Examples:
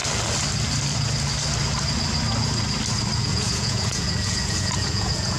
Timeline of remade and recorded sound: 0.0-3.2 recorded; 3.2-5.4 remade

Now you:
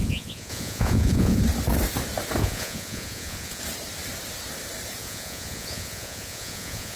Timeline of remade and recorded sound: 0.0-1.4 remade; 1.4-2.4 recorded; 2.4-3.6 remade; 3.6-5.0 recorded; 5.0-7.0 remade